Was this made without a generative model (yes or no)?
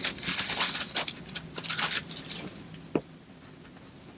yes